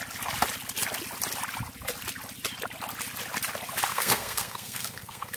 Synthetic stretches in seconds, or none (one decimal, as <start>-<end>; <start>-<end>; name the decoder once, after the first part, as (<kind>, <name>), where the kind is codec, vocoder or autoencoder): 3.9-5.4 (codec, SNAC)